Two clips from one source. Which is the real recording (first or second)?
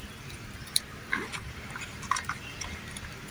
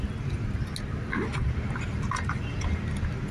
second